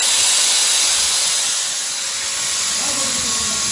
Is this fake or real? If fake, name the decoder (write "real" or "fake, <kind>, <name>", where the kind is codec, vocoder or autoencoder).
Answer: fake, vocoder, Vocos